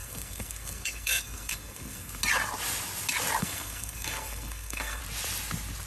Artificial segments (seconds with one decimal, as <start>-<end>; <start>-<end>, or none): 0.0-2.2; 3.4-5.0